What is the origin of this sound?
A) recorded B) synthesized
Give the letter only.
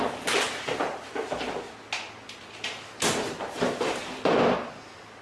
A